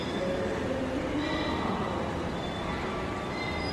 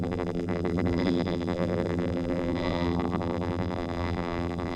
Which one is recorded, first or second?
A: first